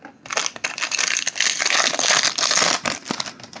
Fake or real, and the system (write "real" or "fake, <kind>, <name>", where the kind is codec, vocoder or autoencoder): real